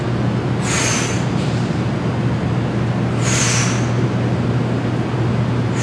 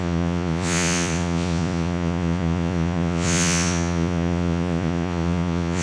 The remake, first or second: second